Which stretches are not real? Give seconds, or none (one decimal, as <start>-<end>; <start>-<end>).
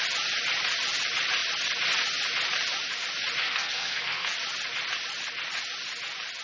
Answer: 3.4-4.3